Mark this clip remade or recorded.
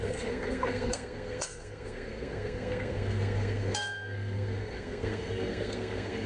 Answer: remade